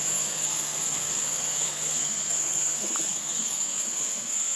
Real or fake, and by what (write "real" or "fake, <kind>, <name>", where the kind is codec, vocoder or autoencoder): fake, codec, SNAC